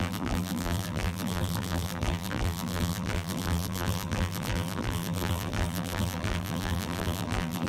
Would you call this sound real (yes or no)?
no